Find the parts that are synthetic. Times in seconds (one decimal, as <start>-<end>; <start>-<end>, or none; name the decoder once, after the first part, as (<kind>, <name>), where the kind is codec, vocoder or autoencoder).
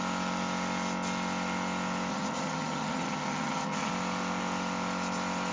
2.1-3.9 (vocoder, HiFi-GAN)